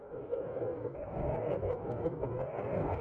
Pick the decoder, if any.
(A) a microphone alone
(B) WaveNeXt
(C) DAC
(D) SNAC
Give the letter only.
C